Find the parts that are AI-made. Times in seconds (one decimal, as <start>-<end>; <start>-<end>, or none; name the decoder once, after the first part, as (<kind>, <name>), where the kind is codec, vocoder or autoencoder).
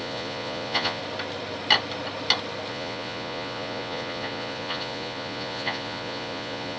0.0-1.0 (vocoder, Vocos); 2.7-6.8